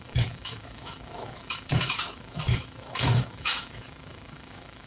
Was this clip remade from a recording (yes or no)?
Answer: yes